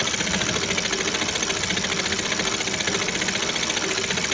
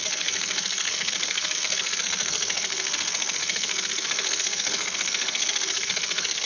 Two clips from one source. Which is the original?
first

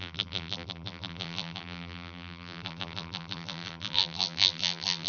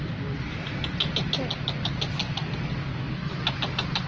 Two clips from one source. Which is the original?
second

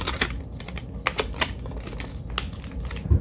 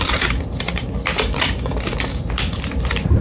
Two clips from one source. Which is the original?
first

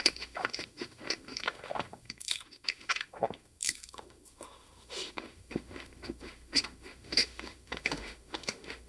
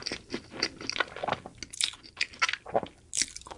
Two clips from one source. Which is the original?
second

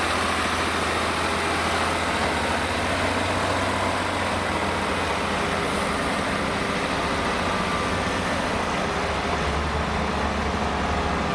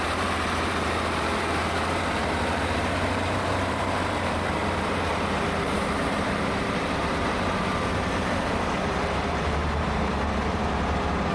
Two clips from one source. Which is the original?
first